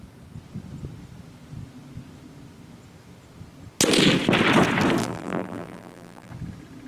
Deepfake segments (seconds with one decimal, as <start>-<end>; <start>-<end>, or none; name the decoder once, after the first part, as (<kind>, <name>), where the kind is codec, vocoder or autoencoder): 5.0-6.3 (vocoder, BigVGAN v2)